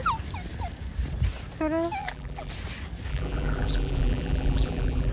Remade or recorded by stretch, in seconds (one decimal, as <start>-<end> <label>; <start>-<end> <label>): 0.0-2.0 recorded; 2.0-2.5 remade; 2.5-3.1 recorded; 3.1-5.1 remade